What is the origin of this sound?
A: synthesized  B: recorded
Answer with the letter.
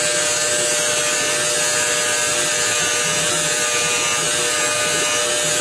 B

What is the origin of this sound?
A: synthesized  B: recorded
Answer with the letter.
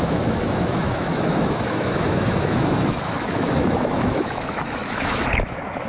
A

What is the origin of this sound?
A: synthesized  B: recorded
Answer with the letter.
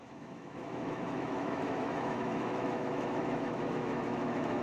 A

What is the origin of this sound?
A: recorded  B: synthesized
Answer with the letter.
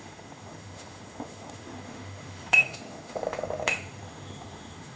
B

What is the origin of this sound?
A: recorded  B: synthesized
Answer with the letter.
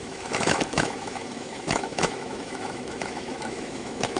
B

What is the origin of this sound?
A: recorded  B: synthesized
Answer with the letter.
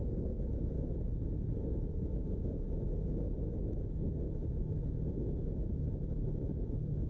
B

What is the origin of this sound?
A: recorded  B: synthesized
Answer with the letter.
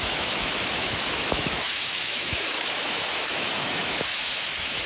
B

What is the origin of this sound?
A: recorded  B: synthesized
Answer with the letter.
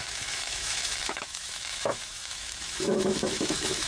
B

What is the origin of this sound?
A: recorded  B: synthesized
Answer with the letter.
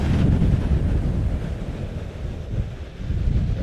A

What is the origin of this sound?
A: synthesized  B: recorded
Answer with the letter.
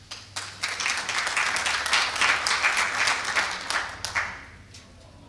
B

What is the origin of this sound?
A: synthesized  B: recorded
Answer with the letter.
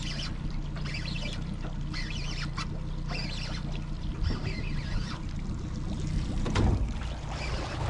B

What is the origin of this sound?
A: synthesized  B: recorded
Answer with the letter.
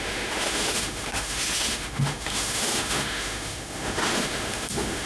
A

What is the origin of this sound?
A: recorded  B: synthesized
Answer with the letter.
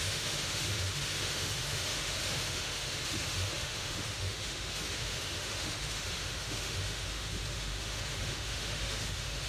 B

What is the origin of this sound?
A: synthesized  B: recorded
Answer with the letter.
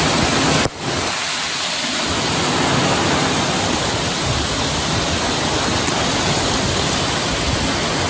B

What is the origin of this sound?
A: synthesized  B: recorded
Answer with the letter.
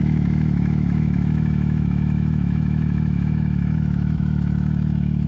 A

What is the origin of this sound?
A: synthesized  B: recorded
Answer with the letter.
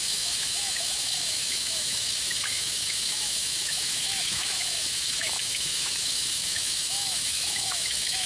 A